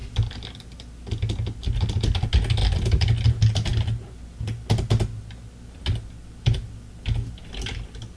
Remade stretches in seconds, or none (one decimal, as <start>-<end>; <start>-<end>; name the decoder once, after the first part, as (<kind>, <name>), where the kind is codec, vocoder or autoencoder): none